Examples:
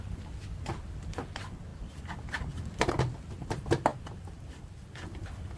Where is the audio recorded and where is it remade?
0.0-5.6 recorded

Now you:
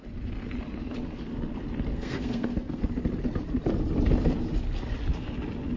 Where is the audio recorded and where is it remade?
0.0-1.9 recorded; 1.9-2.8 remade; 2.8-5.8 recorded

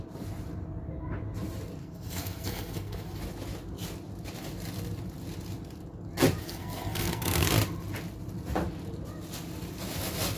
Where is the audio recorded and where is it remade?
0.0-1.8 recorded; 1.8-3.2 remade; 3.2-6.4 recorded; 6.4-7.5 remade; 7.5-10.4 recorded